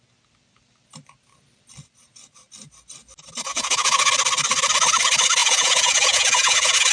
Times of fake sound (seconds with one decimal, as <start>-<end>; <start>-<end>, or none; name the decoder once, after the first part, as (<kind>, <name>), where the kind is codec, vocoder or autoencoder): 3.5-4.1 (vocoder, Vocos); 5.4-6.9